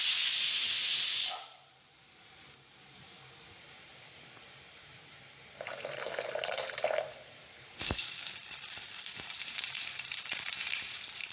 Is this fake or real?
fake